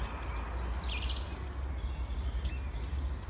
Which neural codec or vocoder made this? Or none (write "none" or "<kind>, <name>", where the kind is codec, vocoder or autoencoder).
none